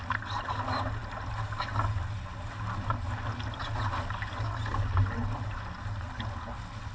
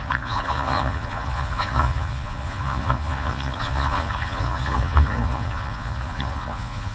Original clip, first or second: first